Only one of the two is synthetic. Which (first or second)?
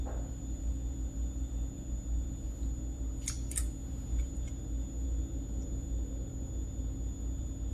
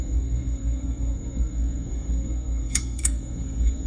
second